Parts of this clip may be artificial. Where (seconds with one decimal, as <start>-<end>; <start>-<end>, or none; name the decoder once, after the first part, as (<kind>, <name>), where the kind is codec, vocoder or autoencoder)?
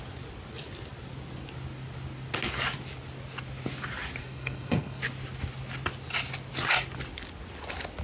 4.2-5.0 (codec, SNAC)